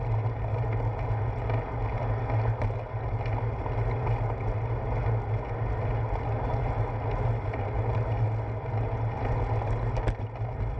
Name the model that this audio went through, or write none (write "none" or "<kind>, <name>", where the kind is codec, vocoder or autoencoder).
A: none